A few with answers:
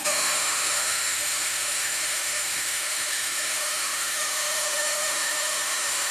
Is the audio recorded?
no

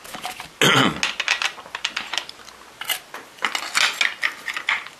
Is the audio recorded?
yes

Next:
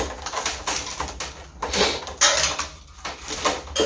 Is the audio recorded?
yes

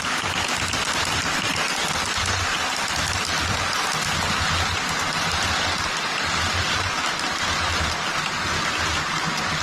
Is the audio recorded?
yes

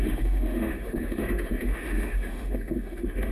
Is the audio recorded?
no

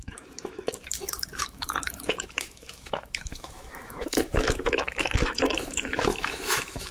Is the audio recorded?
no